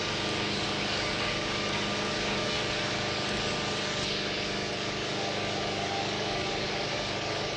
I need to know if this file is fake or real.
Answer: fake